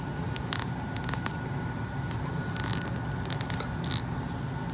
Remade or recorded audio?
recorded